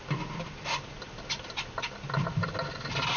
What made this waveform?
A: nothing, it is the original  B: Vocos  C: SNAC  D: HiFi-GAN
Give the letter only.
A